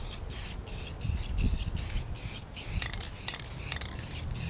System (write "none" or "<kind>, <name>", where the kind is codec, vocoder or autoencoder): none